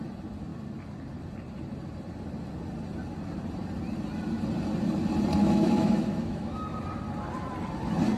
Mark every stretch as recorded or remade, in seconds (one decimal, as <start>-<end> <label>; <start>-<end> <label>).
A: 0.0-5.4 recorded; 5.4-6.6 remade; 6.6-8.2 recorded